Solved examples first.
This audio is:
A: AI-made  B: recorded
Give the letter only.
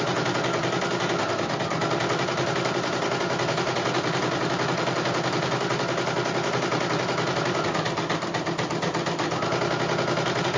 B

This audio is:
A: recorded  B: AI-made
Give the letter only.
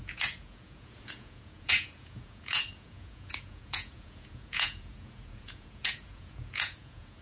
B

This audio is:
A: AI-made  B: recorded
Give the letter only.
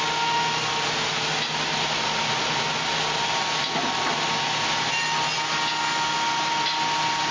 B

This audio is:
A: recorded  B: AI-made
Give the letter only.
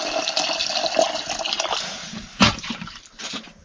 A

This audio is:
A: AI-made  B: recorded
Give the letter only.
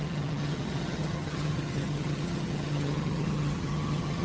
A